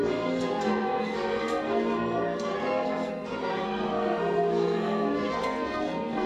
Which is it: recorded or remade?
remade